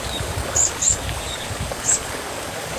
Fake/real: fake